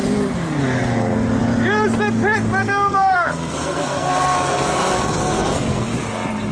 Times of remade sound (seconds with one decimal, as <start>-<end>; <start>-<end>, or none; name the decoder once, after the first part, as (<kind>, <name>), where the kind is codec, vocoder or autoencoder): 2.6-5.9 (codec, SNAC)